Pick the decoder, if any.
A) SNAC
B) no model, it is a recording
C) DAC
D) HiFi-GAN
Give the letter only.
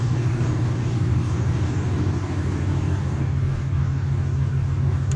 C